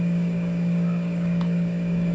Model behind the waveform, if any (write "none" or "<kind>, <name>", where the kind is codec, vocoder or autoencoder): codec, DAC